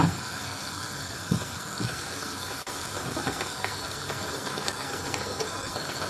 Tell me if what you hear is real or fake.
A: fake